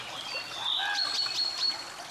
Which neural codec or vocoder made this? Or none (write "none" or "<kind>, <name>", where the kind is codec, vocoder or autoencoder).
none